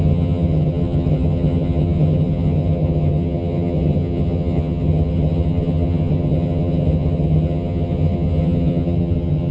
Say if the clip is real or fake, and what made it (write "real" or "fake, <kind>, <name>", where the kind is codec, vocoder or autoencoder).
fake, vocoder, HiFi-GAN